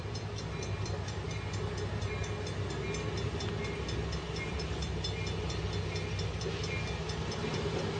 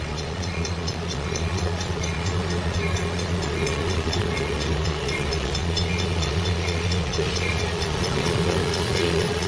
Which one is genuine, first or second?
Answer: first